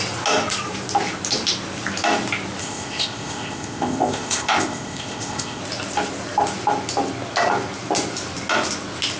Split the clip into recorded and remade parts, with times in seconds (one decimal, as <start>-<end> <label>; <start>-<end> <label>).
0.0-2.6 recorded; 2.6-5.6 remade; 5.6-9.2 recorded